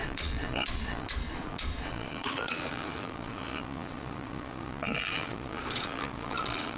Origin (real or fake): fake